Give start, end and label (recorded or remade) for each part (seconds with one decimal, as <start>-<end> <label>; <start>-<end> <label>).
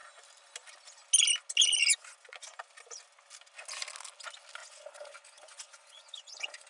0.0-1.9 recorded; 1.9-2.6 remade; 2.6-4.6 recorded; 4.6-6.7 remade